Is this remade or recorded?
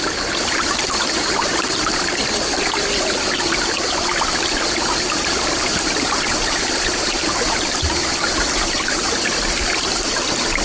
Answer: recorded